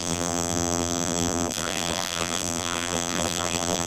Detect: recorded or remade remade